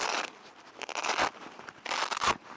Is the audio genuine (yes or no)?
yes